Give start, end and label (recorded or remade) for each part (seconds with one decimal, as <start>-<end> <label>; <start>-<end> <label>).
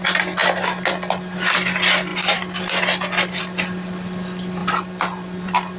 0.0-2.1 recorded; 2.1-3.4 remade; 3.4-4.6 recorded; 4.6-5.8 remade